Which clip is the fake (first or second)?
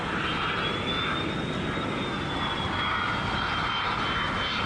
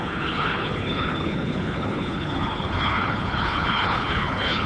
second